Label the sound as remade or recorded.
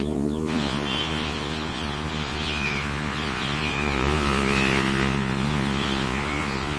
remade